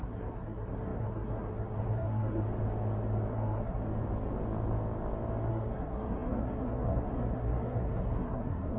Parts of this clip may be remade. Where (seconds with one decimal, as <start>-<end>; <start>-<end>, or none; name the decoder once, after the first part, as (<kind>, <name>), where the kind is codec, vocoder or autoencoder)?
0.0-2.4 (codec, SNAC); 3.3-3.8; 5.5-8.8